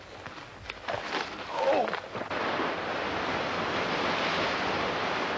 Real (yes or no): yes